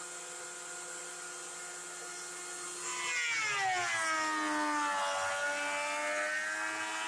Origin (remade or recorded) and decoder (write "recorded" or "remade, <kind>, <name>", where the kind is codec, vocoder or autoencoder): recorded